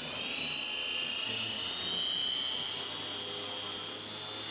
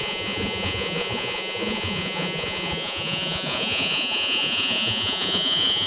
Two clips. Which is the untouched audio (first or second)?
first